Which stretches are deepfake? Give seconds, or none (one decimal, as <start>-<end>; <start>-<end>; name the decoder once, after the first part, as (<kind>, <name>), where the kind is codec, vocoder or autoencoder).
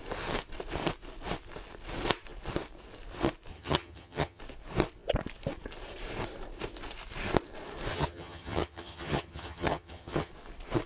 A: 3.5-4.4 (vocoder, HiFi-GAN); 7.9-10.3